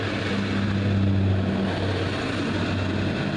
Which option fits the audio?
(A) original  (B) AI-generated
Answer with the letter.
A